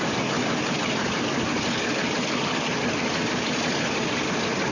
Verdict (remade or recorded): recorded